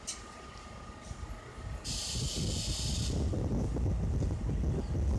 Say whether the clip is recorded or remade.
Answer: recorded